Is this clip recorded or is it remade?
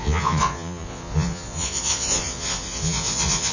remade